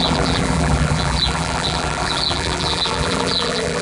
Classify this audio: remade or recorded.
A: remade